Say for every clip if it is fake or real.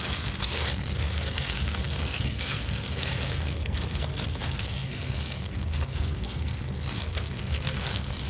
fake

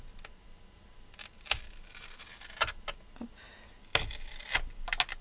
real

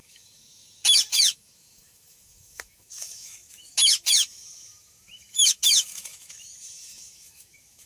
fake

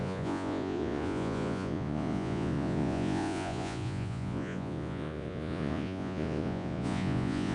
fake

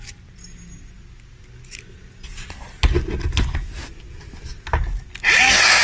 real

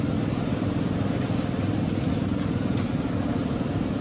real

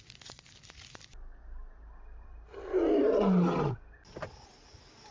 real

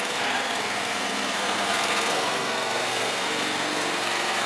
fake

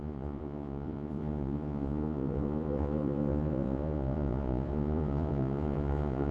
fake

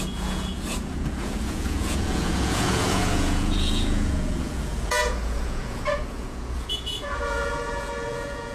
fake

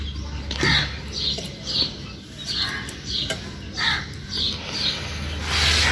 real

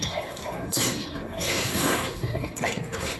fake